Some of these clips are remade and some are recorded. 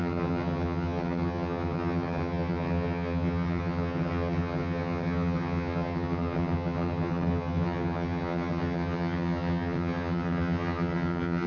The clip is remade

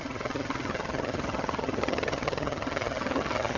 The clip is remade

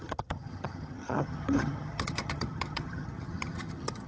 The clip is remade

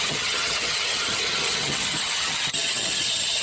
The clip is remade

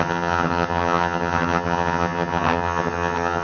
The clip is remade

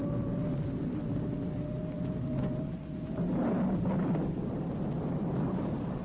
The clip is recorded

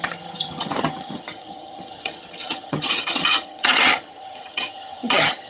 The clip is remade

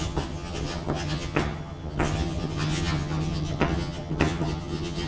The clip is remade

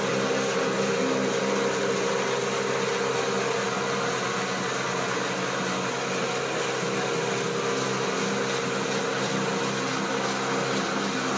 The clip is recorded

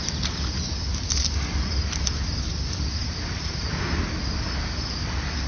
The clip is recorded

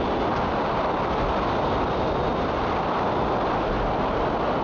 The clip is recorded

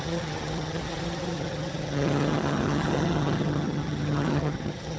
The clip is remade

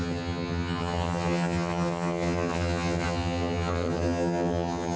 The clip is remade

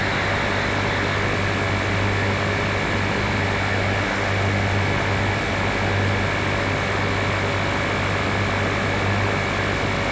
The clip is recorded